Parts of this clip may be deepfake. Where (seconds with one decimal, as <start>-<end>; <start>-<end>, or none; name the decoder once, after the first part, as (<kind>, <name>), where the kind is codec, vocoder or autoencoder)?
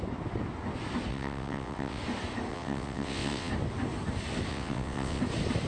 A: 1.1-2.0 (vocoder, WaveNeXt); 2.5-3.5; 4.5-5.2